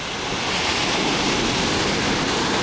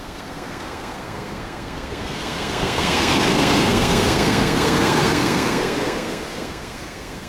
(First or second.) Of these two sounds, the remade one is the second